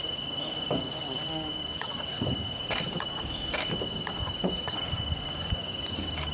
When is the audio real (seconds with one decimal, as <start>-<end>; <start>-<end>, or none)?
none